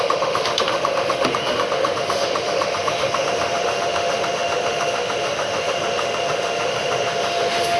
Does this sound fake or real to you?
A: fake